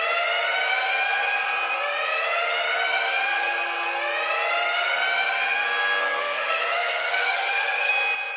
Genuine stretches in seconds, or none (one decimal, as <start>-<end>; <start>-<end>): 0.0-6.0; 7.9-8.4